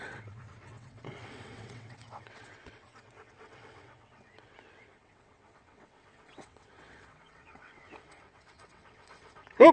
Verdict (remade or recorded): remade